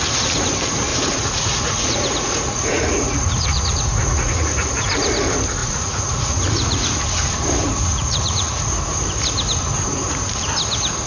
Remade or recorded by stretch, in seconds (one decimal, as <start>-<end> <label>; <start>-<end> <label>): 0.0-0.9 recorded; 0.9-4.9 remade; 4.9-5.6 recorded; 5.6-7.0 remade; 7.0-7.9 recorded; 7.9-8.5 remade; 8.5-11.1 recorded